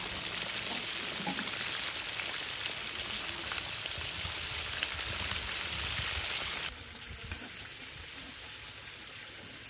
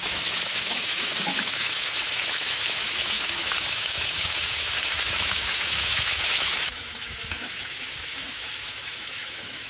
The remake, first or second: second